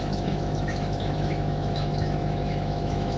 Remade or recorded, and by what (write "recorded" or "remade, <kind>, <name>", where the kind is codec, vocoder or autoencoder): remade, autoencoder, DAC-VAE